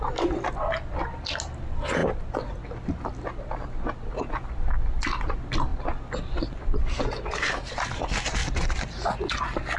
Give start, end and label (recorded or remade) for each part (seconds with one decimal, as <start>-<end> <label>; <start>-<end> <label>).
0.0-9.8 recorded